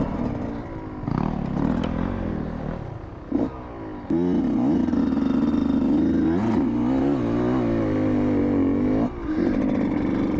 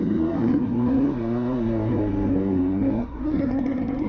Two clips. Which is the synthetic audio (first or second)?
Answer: second